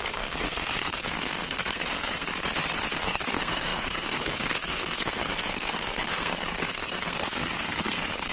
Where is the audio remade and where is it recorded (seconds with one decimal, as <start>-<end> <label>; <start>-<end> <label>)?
0.0-2.3 remade; 2.3-3.0 recorded; 3.0-8.3 remade